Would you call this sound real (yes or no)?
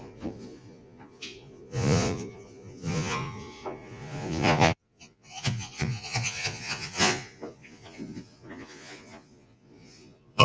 no